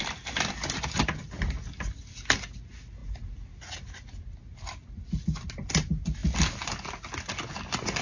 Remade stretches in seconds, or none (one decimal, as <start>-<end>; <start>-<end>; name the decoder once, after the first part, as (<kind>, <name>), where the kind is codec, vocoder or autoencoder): none